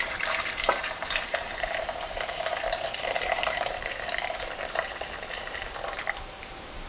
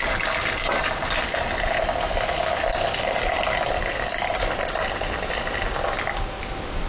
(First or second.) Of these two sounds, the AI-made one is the first